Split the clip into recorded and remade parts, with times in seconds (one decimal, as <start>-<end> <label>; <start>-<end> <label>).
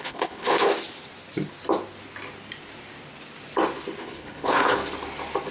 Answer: 0.0-0.7 remade; 0.7-4.0 recorded; 4.0-4.8 remade; 4.8-5.5 recorded